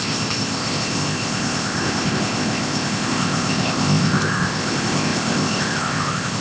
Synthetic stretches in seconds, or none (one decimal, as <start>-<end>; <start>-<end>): 0.0-6.4